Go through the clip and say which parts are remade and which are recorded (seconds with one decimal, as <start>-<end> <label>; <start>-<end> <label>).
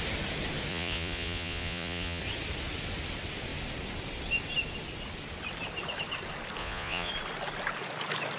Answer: 0.0-0.7 recorded; 0.7-2.2 remade; 2.2-6.6 recorded; 6.6-7.1 remade; 7.1-8.4 recorded